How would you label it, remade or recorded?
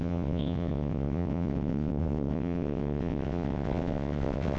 remade